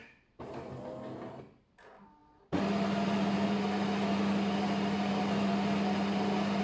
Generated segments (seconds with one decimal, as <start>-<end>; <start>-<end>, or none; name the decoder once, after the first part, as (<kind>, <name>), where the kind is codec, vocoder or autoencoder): 0.0-0.7 (vocoder, BigVGAN v2); 2.2-6.6